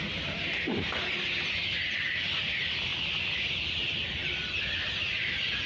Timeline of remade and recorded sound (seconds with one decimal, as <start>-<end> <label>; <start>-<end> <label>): 0.0-2.9 recorded; 2.9-3.5 remade; 3.5-5.7 recorded